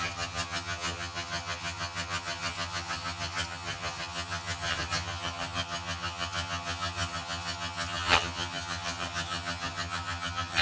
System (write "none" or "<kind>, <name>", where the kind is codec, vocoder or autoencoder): vocoder, HiFi-GAN